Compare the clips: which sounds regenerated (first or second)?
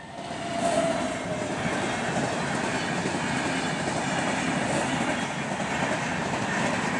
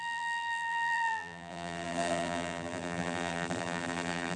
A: second